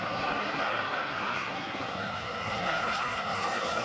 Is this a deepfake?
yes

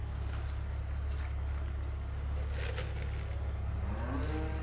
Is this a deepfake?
no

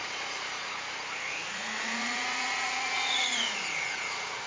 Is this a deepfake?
yes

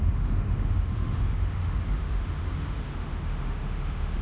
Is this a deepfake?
yes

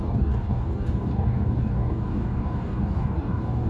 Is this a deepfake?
yes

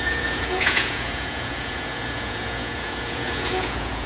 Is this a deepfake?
yes